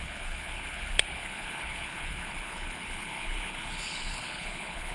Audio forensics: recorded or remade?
remade